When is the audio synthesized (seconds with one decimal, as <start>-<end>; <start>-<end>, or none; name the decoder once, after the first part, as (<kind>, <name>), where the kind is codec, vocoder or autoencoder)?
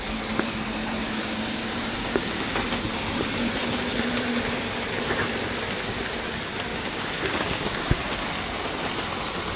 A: 1.0-2.5 (codec, DAC); 6.7-7.9